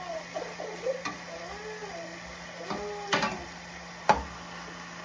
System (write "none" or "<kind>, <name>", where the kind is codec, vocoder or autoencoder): none